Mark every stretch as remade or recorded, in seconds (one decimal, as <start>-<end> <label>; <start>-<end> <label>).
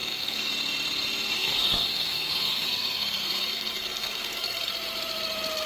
0.0-0.5 remade; 0.5-1.3 recorded; 1.3-4.7 remade; 4.7-5.7 recorded